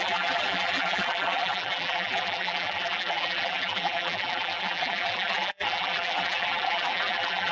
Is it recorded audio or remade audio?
remade